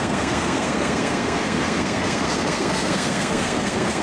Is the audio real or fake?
fake